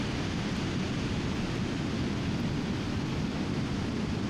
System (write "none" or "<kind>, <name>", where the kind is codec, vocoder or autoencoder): none